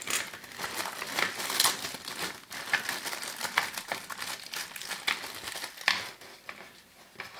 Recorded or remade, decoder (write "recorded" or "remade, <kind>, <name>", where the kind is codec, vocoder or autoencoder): recorded